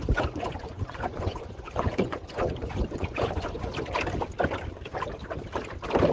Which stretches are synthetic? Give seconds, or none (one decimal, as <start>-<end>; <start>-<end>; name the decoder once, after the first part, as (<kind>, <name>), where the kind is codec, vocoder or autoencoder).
0.0-3.7 (vocoder, Vocos)